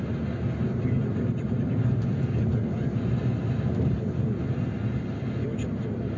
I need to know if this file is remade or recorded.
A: recorded